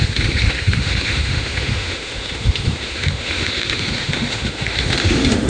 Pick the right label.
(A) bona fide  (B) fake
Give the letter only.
B